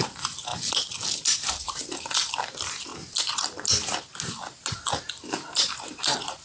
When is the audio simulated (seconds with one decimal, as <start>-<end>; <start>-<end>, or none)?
0.0-0.5; 1.5-2.9; 4.9-6.4